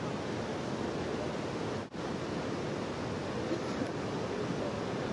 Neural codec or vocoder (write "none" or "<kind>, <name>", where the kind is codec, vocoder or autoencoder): none